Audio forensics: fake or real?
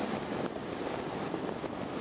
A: real